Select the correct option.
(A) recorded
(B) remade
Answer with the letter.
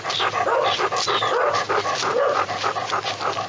A